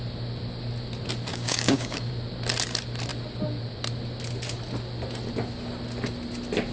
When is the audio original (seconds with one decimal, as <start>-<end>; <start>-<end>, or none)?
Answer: 0.0-1.3; 2.1-6.7